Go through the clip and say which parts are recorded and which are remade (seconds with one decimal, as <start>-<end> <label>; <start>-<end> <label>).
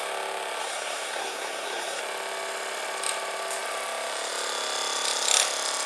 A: 0.0-0.6 recorded; 0.6-2.0 remade; 2.0-5.9 recorded